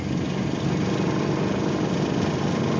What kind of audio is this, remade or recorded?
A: recorded